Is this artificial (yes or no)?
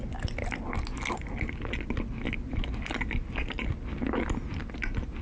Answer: no